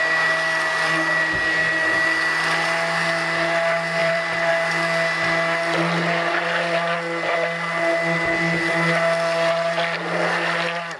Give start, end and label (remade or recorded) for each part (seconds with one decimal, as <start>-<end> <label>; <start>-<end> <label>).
0.0-4.0 recorded; 4.0-4.5 remade; 4.5-11.0 recorded